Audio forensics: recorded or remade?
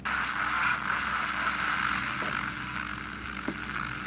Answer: recorded